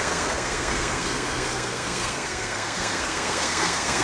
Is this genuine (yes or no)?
no